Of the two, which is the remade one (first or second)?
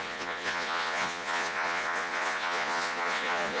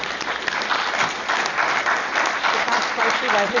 first